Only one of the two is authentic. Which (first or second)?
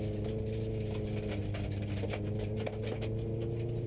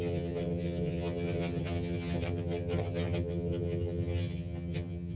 first